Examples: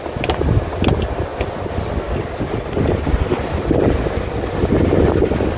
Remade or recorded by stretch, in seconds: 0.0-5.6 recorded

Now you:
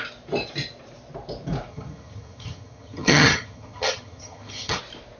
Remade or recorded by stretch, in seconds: 0.0-1.7 recorded; 1.7-4.8 remade; 4.8-5.2 recorded

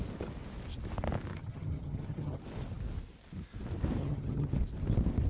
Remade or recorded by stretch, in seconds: 0.0-1.3 recorded; 1.3-2.4 remade; 2.4-4.0 recorded; 4.0-4.5 remade; 4.5-5.3 recorded

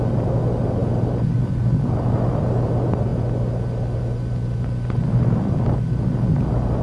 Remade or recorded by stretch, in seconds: 0.0-6.8 recorded

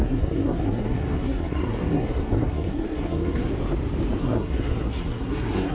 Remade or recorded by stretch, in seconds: 0.0-3.5 remade; 3.5-4.2 recorded; 4.2-5.7 remade

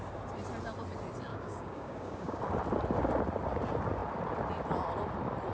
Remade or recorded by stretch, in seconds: 0.0-1.3 recorded; 1.3-2.4 remade; 2.4-5.5 recorded

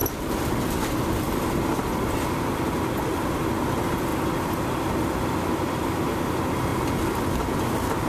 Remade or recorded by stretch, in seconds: 0.0-1.8 remade; 1.8-8.1 recorded

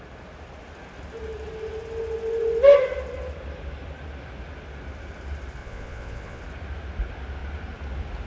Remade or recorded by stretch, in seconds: 0.0-5.6 recorded; 5.6-6.4 remade; 6.4-8.3 recorded